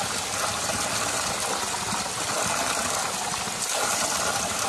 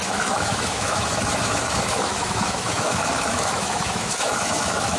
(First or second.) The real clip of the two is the first